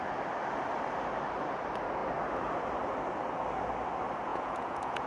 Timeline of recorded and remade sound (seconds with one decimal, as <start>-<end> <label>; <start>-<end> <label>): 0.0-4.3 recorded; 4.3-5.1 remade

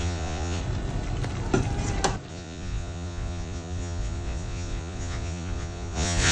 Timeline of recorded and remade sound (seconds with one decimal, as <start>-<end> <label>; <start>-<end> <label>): 0.0-0.6 remade; 0.6-2.3 recorded; 2.3-6.3 remade

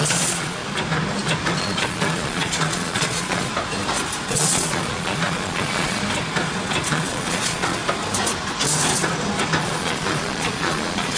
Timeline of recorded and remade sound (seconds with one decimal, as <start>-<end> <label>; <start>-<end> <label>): 0.0-0.6 remade; 0.6-1.6 recorded; 1.6-3.5 remade; 3.5-4.3 recorded; 4.3-6.0 remade; 6.0-6.9 recorded; 6.9-7.8 remade; 7.8-9.6 recorded; 9.6-11.2 remade

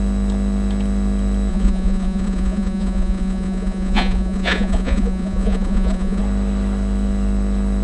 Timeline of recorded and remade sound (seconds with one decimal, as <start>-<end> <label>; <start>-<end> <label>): 0.0-1.5 recorded; 1.5-6.2 remade; 6.2-7.8 recorded

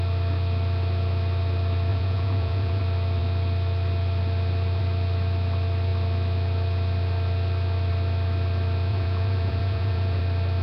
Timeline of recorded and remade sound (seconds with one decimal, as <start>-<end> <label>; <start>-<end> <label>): 0.0-1.9 recorded; 1.9-2.8 remade; 2.8-8.9 recorded; 8.9-10.2 remade; 10.2-10.6 recorded